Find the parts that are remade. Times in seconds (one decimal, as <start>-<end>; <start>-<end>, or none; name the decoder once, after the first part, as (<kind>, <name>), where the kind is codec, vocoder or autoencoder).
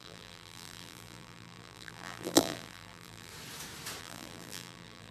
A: 0.0-3.3 (vocoder, BigVGAN v2); 4.0-5.1